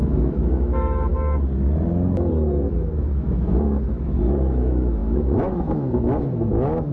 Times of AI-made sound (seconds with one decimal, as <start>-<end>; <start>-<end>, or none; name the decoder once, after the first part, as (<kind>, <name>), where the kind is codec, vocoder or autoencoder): 0.0-1.1 (autoencoder, DAC-VAE); 2.3-6.9

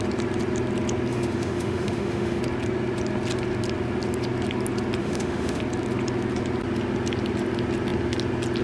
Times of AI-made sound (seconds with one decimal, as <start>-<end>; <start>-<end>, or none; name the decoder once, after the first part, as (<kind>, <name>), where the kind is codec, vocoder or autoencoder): 1.1-2.4 (autoencoder, DAC-VAE); 5.0-5.6

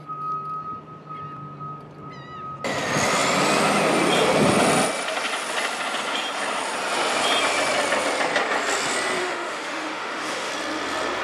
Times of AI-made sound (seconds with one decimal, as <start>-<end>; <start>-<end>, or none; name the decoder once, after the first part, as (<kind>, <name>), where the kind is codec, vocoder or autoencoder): 9.2-10.5 (autoencoder, DAC-VAE)

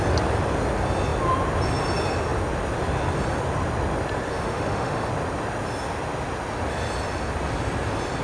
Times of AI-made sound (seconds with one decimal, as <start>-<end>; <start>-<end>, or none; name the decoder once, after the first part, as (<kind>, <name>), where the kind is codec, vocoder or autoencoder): 4.3-5.1 (autoencoder, DAC-VAE)

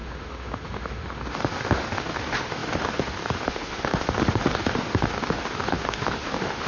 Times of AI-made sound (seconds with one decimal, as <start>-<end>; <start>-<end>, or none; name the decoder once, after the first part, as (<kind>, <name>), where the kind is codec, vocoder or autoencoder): 0.0-6.7 (autoencoder, DAC-VAE)

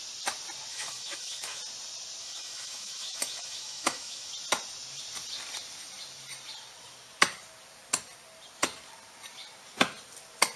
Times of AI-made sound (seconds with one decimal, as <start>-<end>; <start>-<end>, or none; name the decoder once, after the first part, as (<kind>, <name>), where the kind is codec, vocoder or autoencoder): 0.7-1.6 (autoencoder, DAC-VAE); 2.2-4.3